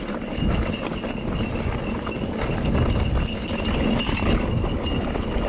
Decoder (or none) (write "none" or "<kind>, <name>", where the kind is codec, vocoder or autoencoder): none